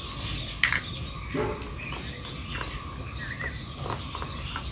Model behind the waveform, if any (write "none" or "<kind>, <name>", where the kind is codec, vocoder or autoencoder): none